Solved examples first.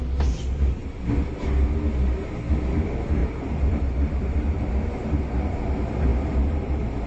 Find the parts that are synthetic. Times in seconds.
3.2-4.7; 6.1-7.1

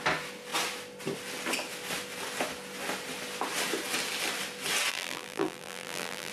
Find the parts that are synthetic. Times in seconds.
4.9-6.3

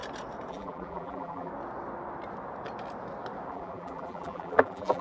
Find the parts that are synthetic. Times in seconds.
0.5-1.5; 3.5-5.0

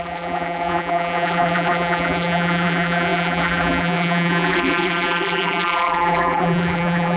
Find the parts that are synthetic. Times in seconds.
0.0-7.2

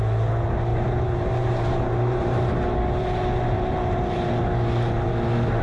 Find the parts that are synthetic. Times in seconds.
0.7-2.5; 3.0-5.1

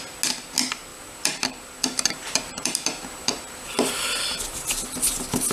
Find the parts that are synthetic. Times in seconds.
0.9-4.2

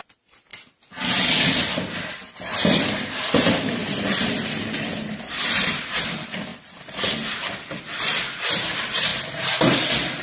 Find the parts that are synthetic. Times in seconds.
0.0-0.5; 1.8-3.8; 5.2-9.1

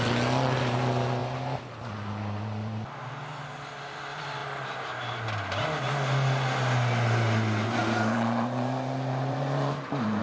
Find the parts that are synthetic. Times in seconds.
7.8-10.2